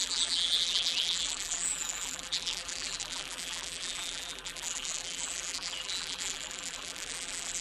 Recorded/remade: remade